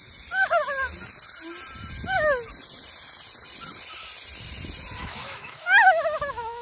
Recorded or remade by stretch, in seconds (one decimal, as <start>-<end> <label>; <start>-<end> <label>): 0.0-5.0 recorded; 5.0-6.6 remade